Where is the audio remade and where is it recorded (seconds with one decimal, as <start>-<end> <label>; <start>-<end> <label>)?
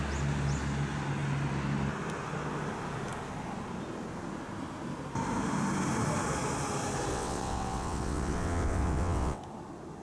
0.0-7.1 recorded; 7.1-9.4 remade; 9.4-10.0 recorded